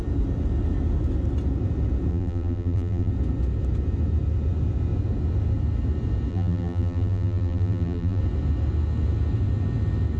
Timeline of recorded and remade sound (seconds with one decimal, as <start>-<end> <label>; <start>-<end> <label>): 0.0-2.1 recorded; 2.1-3.1 remade; 3.1-6.3 recorded; 6.3-8.2 remade; 8.2-10.2 recorded